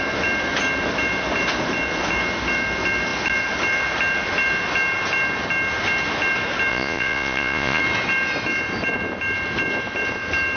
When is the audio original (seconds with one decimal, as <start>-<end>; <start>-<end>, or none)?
0.0-6.7; 7.8-10.6